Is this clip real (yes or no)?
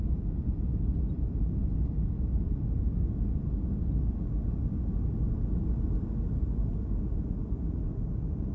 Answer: yes